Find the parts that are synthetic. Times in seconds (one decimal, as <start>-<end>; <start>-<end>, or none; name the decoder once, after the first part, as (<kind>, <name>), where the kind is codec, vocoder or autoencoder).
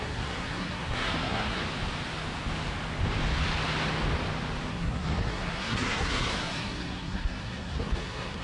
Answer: 0.0-1.6 (codec, SNAC); 4.7-8.4